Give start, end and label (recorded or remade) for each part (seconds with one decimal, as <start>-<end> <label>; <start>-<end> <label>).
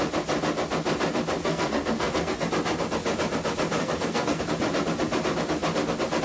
0.0-1.4 recorded; 1.4-2.5 remade; 2.5-3.8 recorded; 3.8-4.4 remade; 4.4-6.2 recorded